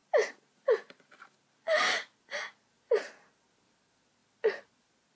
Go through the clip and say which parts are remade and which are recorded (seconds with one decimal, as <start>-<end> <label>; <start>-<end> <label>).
0.0-5.2 recorded